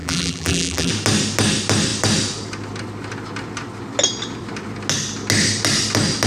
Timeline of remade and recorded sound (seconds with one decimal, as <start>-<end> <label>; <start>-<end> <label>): 0.0-0.9 remade; 0.9-6.3 recorded